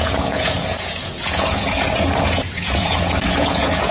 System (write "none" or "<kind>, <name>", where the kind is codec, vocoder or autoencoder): vocoder, Vocos